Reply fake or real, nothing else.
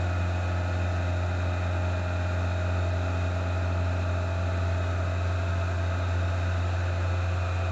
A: real